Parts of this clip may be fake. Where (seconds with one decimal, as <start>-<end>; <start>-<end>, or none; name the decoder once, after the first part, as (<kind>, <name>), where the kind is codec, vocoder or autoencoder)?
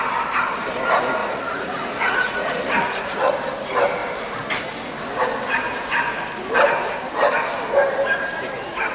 1.2-3.3 (vocoder, Vocos)